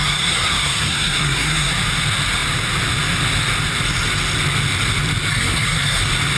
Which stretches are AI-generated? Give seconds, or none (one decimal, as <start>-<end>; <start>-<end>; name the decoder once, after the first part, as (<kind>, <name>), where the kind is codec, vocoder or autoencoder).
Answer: 0.0-1.7 (codec, SNAC); 5.3-6.0